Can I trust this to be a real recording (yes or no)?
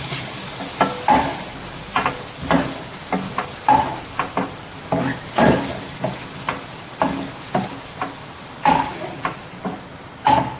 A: yes